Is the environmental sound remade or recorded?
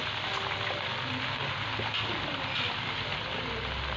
recorded